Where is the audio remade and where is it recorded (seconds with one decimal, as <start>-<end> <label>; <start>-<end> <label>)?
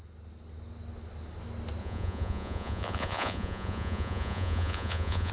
0.0-1.8 recorded; 1.8-5.3 remade